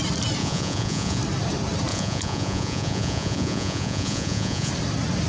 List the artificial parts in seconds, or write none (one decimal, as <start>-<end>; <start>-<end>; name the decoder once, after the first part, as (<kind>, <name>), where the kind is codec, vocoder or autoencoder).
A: 0.4-1.2 (vocoder, Vocos); 1.9-4.7